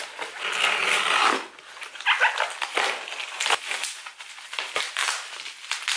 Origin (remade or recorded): recorded